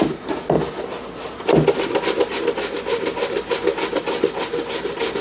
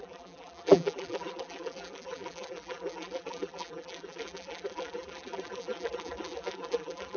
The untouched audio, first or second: first